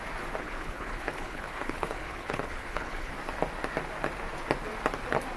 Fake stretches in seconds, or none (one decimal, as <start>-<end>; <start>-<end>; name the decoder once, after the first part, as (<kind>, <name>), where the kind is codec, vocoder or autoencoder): 0.4-3.1 (codec, HILCodec)